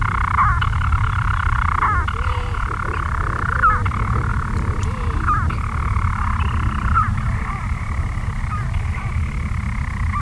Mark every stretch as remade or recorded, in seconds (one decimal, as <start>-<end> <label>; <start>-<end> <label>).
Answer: 0.0-4.3 recorded; 4.3-8.4 remade; 8.4-10.2 recorded